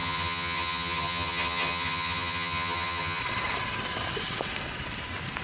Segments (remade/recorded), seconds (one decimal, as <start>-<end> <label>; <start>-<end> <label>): 0.0-3.2 remade; 3.2-5.4 recorded